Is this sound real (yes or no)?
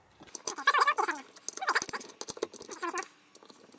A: yes